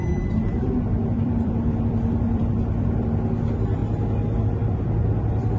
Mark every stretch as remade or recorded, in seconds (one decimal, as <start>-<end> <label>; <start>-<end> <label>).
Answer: 0.0-3.8 remade; 3.8-4.4 recorded; 4.4-5.6 remade